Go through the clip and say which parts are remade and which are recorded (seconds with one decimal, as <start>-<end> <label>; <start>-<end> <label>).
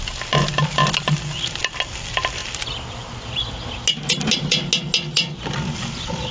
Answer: 0.0-6.3 recorded